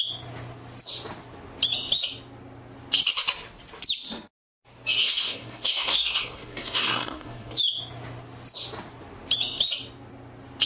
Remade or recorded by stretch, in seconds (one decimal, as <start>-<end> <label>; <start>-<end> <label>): 0.0-5.0 recorded; 5.0-7.6 remade; 7.6-10.7 recorded